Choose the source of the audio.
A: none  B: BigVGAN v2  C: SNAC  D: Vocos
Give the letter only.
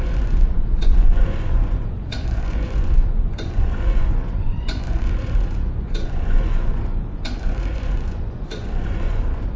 D